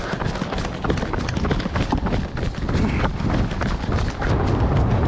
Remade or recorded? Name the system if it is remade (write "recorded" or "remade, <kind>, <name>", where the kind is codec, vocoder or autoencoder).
recorded